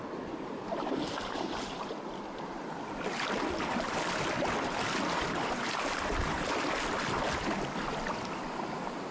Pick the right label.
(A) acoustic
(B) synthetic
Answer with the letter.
A